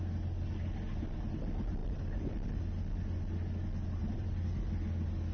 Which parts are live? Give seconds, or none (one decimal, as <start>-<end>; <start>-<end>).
0.0-1.8; 2.5-4.0; 4.6-5.3